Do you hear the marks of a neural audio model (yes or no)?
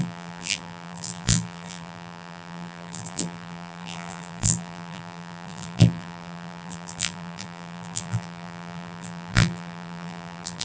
yes